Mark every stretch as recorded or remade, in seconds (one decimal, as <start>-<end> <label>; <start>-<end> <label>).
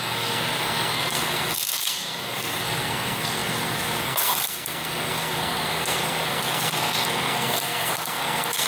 0.0-8.7 remade